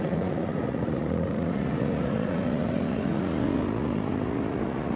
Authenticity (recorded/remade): remade